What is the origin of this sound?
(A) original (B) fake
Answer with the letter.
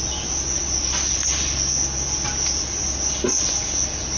A